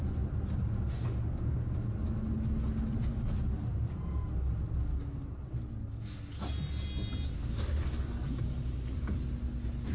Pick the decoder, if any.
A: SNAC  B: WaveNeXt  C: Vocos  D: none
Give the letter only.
D